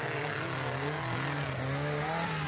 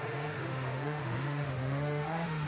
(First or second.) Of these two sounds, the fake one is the second